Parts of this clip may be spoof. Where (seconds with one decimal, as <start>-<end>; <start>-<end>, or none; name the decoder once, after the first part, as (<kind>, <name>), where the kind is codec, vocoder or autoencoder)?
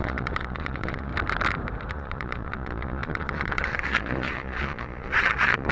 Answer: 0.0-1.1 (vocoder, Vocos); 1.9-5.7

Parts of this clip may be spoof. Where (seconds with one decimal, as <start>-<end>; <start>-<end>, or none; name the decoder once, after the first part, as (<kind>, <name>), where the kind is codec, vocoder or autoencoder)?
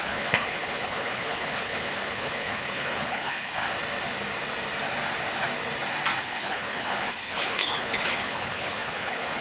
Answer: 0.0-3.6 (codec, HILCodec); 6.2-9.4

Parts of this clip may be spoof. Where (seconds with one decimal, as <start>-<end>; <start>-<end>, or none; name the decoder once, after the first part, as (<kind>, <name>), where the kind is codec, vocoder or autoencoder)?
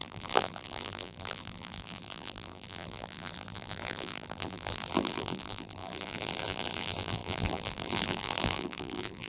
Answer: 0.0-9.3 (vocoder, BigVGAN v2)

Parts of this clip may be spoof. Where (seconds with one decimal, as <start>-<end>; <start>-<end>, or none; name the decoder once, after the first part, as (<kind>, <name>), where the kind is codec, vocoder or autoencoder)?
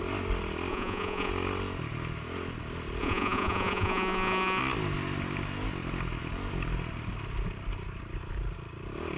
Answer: 0.7-1.3 (vocoder, Vocos); 3.0-4.6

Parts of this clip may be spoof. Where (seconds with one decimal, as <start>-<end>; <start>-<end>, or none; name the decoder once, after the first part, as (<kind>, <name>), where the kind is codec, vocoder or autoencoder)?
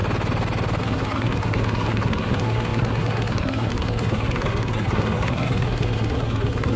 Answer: 0.8-6.8 (codec, SNAC)